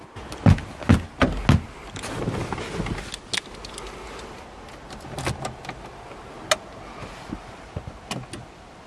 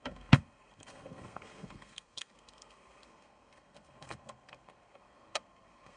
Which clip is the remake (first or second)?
second